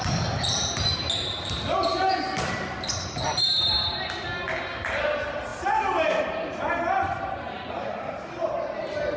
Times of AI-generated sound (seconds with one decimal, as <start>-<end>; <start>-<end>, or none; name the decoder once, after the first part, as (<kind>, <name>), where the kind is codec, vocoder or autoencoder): none